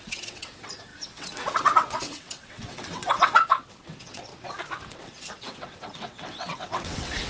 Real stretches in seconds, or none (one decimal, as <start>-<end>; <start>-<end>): 4.3-4.9